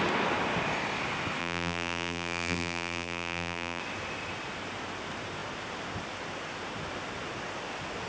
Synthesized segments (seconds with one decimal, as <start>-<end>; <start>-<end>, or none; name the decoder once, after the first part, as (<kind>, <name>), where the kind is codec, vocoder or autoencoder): 1.4-3.8 (vocoder, BigVGAN v2)